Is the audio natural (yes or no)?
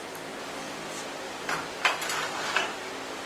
yes